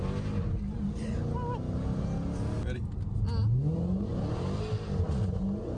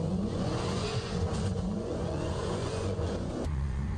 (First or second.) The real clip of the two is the first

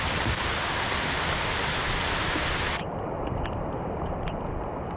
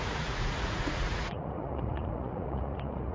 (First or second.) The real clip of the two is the first